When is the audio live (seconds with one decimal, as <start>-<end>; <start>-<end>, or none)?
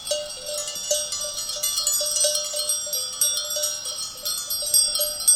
0.0-5.4